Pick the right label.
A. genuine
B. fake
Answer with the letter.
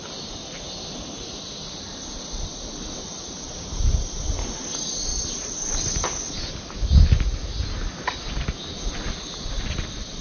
A